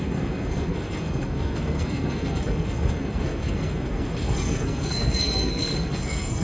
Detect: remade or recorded remade